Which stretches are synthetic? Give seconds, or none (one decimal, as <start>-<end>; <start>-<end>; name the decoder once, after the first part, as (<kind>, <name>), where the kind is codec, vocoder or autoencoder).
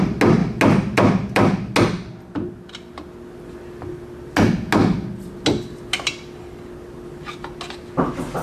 none